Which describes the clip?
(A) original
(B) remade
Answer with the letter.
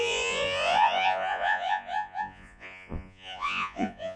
B